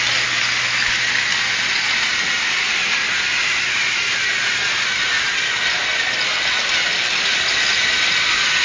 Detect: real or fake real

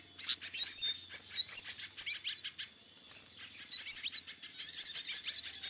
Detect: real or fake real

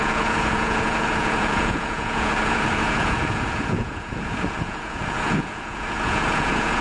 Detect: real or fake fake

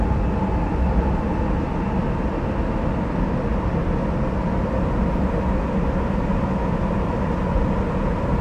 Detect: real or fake real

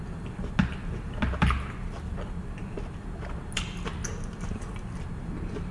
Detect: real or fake real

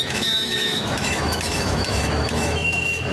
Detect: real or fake fake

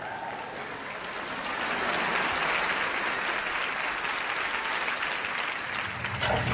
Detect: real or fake real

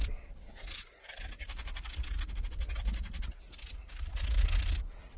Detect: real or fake real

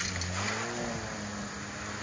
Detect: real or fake real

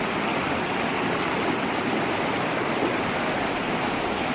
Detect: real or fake real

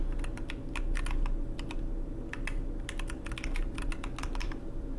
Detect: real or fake real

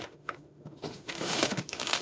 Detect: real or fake fake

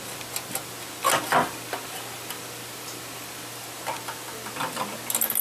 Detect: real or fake real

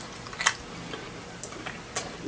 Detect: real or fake real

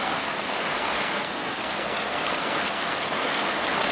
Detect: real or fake fake